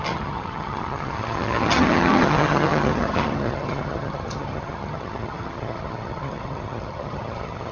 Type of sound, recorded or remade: remade